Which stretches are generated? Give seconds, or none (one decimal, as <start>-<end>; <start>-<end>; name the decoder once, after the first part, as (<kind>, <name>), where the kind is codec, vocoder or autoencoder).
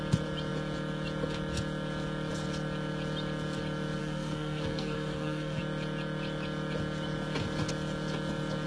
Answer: 4.0-5.6 (codec, SNAC)